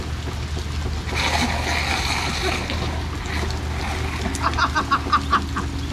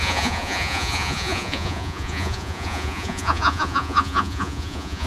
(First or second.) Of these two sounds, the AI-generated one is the second